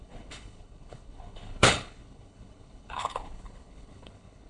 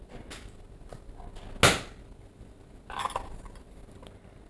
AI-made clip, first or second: first